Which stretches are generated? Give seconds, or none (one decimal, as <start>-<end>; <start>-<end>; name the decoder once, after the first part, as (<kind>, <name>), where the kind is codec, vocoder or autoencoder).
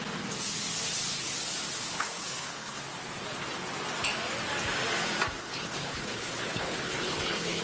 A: 1.8-2.8 (codec, HILCodec); 5.4-7.6